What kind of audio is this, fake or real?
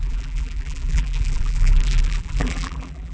fake